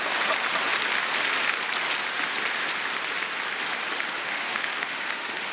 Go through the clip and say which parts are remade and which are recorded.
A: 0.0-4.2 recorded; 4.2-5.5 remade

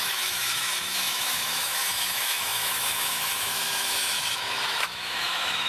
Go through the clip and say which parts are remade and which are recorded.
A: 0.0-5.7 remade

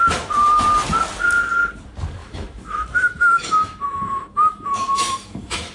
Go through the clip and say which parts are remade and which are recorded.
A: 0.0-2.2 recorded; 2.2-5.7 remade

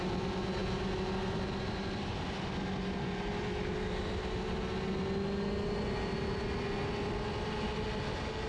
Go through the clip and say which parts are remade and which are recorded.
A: 0.0-8.5 recorded